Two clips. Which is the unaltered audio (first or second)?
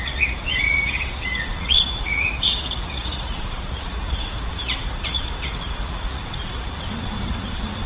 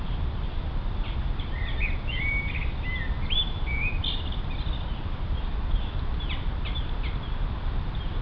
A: second